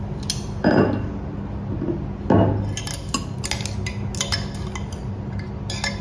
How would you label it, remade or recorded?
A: recorded